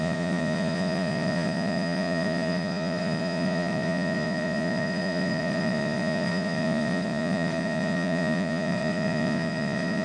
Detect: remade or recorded remade